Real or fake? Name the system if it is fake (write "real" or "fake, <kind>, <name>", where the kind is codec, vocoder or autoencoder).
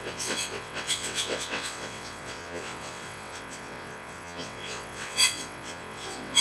fake, vocoder, WaveNeXt